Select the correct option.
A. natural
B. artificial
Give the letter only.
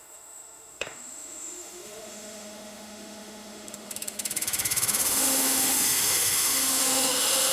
B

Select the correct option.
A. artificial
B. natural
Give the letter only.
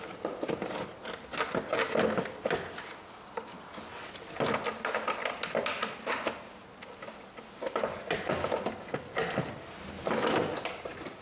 B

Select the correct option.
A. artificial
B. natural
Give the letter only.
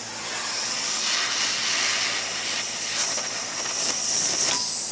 B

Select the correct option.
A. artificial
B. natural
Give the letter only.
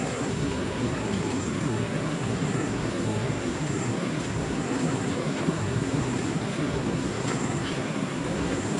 A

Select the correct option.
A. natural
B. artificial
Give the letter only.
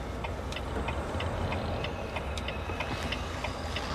A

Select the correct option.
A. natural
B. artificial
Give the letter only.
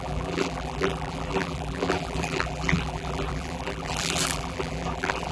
B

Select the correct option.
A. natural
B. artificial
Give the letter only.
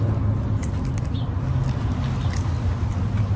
A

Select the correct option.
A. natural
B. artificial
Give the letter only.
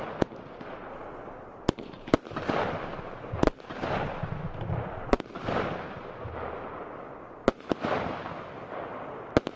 A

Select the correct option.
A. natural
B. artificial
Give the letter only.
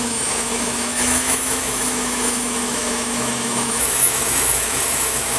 B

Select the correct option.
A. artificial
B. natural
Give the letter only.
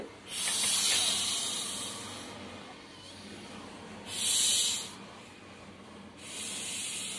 B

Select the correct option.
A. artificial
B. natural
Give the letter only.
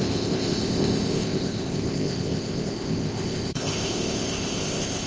A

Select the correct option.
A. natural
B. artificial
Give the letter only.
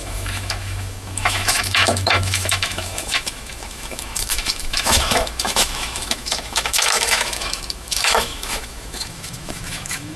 B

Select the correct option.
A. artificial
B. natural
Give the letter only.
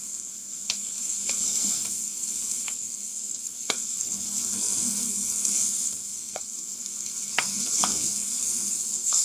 A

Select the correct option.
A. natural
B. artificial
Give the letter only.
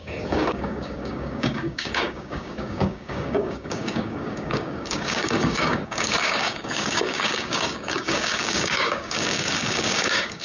B